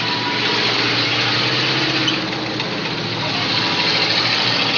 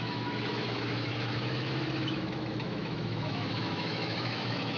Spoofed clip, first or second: second